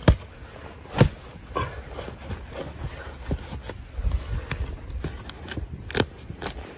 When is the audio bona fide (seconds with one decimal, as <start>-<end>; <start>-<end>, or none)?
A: 0.0-6.8